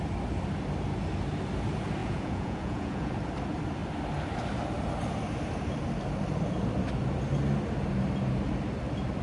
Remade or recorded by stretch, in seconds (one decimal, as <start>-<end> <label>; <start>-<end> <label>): 0.0-2.0 recorded; 2.0-3.1 remade; 3.1-9.2 recorded